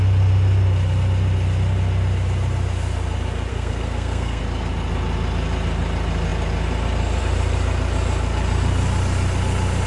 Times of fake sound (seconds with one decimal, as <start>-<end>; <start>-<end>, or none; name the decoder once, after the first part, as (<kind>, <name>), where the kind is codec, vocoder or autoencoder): 3.5-4.4 (codec, SNAC)